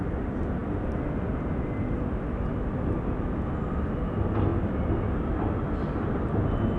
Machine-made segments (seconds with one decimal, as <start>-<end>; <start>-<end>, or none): none